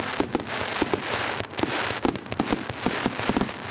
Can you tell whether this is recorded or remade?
recorded